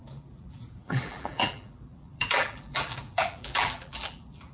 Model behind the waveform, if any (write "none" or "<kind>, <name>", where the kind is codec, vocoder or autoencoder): vocoder, BigVGAN v2